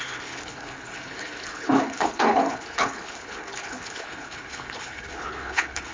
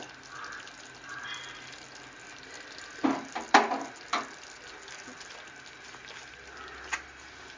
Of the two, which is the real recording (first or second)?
second